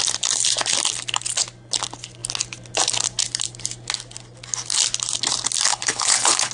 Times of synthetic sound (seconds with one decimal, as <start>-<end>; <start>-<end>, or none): 5.7-6.5